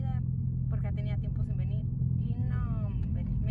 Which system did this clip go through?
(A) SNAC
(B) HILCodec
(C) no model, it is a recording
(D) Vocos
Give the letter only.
C